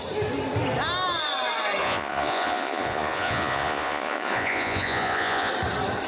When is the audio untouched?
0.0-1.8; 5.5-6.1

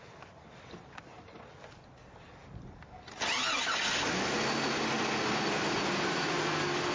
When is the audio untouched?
0.0-6.9

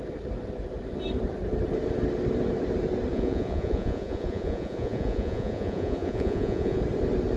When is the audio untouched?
0.0-3.1; 6.8-7.4

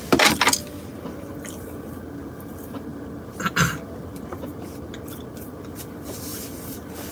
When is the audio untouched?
0.0-2.9; 4.7-6.3

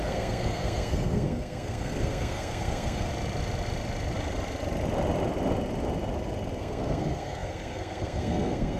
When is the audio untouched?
3.1-6.6